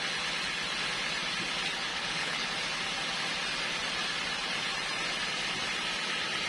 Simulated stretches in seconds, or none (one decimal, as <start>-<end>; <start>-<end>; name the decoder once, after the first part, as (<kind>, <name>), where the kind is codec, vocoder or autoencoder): 1.9-2.5 (codec, HILCodec)